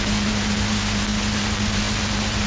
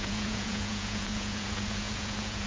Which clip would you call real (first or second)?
first